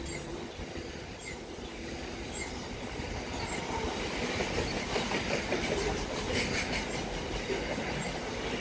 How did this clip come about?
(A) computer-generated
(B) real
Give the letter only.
B